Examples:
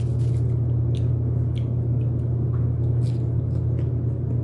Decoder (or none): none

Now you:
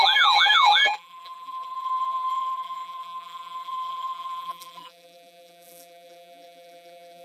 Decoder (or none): vocoder, BigVGAN v2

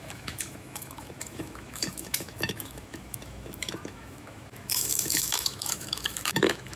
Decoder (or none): autoencoder, DAC-VAE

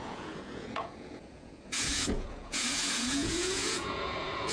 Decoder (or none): vocoder, Vocos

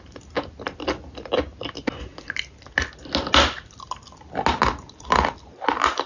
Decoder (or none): none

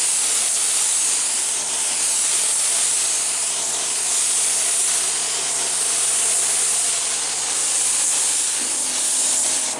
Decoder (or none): none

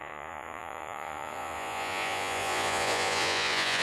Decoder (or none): vocoder, Vocos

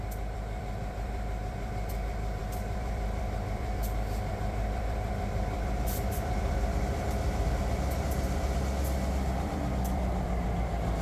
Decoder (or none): vocoder, BigVGAN v2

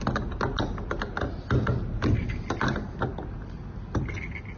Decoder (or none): none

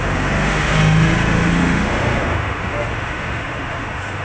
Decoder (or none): autoencoder, DAC-VAE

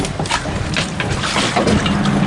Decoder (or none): none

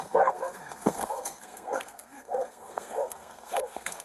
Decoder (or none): codec, SNAC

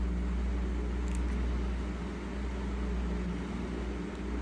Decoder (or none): none